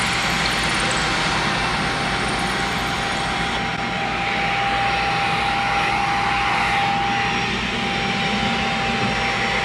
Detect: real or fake real